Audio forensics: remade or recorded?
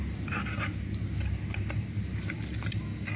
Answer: recorded